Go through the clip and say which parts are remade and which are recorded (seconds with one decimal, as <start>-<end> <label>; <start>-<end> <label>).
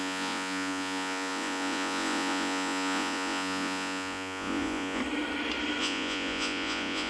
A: 0.0-5.0 remade; 5.0-5.8 recorded; 5.8-7.1 remade